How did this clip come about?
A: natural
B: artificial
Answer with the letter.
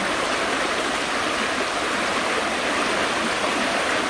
A